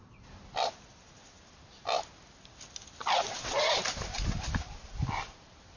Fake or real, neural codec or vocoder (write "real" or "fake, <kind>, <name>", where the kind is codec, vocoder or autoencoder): real